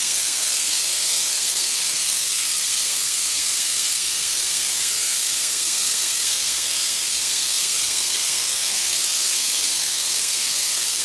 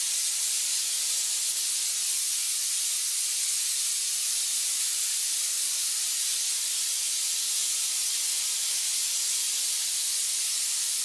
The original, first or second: second